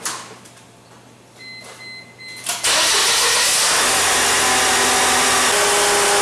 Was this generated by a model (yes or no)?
no